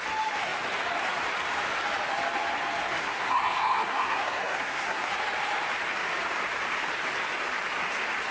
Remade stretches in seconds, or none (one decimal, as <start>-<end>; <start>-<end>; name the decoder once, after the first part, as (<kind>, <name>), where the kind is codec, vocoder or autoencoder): 3.0-5.1 (codec, SNAC)